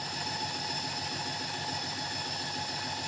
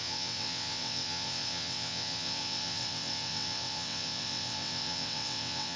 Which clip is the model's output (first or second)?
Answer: second